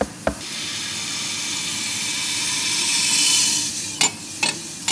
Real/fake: real